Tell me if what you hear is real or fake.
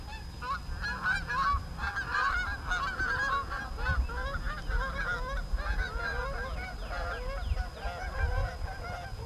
real